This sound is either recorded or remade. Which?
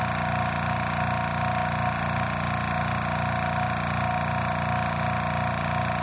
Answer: recorded